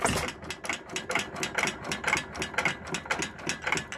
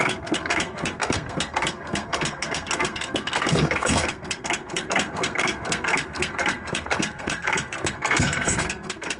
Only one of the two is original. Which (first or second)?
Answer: first